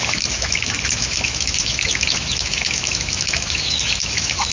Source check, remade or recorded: remade